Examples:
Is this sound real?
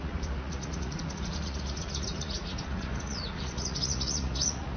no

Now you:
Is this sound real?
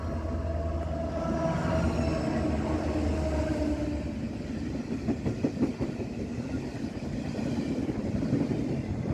yes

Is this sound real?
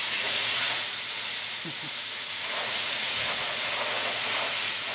no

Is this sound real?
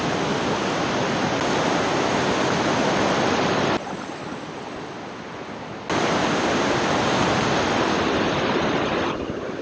yes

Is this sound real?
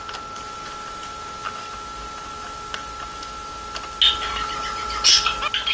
yes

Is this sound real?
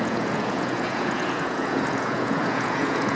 no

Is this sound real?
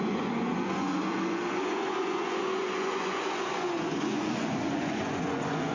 no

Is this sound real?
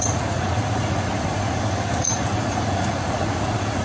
no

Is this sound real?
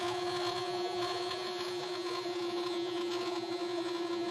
no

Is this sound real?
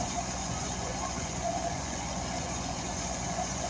no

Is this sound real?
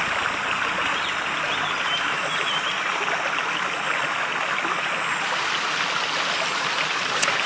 yes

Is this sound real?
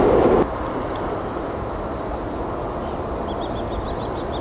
yes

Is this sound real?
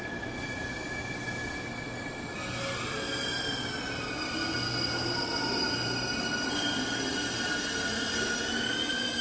yes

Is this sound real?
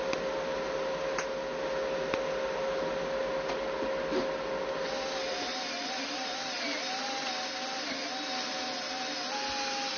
yes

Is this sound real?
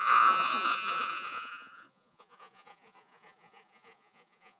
no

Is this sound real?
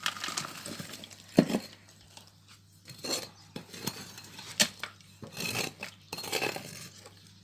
yes